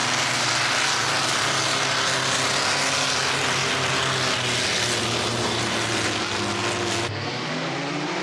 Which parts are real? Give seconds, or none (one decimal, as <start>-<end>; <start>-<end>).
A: 0.0-8.2